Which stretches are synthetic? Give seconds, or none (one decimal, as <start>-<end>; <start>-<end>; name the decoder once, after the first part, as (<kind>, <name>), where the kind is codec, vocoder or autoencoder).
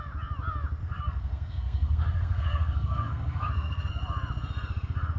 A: 0.8-3.9 (codec, SNAC)